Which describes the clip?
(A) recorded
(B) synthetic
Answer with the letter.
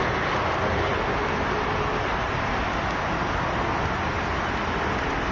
A